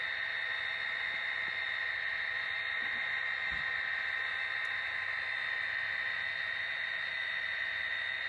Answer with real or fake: real